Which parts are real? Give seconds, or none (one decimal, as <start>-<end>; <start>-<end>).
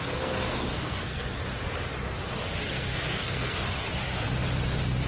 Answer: 1.4-2.7; 3.6-5.1